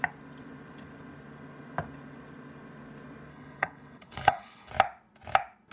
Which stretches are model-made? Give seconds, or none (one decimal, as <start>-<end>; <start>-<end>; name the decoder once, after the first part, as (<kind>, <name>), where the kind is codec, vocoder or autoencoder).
3.3-4.7 (codec, HILCodec)